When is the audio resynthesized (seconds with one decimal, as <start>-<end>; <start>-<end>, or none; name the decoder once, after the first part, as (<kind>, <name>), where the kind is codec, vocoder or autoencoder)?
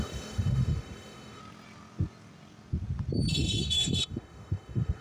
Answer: 0.0-1.4 (autoencoder, DAC-VAE); 3.3-5.0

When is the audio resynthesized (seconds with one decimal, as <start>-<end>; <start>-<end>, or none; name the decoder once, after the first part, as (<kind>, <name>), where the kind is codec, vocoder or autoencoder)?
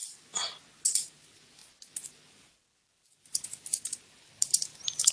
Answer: none